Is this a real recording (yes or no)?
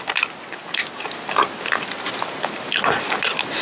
yes